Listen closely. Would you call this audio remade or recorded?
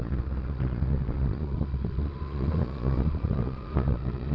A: remade